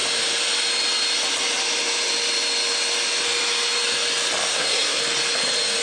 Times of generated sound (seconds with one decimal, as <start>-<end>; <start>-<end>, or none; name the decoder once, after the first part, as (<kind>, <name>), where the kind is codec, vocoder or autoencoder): 4.5-5.0 (codec, SNAC)